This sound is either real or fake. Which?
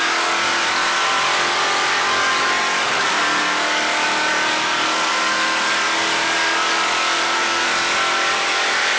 fake